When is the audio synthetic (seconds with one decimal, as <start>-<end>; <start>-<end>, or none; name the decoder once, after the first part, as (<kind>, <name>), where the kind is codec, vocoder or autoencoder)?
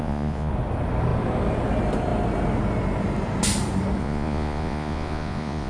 0.0-0.5 (vocoder, Vocos); 4.0-5.7